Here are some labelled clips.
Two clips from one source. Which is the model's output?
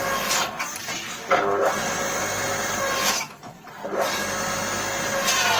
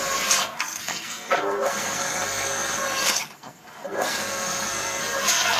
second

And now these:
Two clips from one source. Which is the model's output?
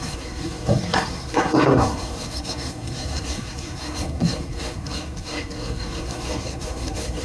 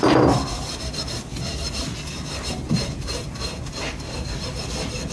first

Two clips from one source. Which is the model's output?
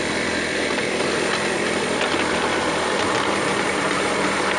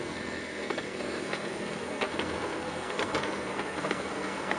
second